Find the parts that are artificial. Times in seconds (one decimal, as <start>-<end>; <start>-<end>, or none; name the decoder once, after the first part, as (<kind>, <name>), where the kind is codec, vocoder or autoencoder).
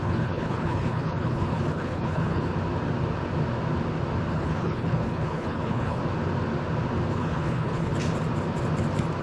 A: 0.0-2.5 (codec, HILCodec); 4.3-6.0; 7.1-7.9